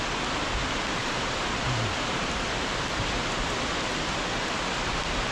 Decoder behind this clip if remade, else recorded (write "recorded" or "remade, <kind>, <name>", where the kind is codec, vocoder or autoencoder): recorded